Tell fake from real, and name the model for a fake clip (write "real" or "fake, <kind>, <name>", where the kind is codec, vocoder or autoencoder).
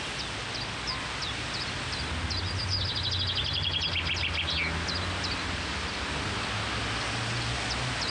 real